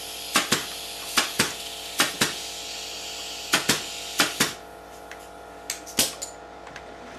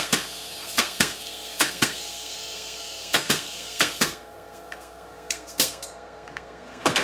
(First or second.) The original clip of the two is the first